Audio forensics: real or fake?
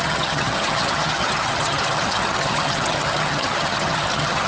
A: fake